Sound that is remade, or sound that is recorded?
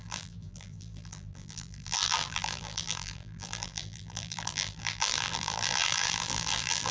remade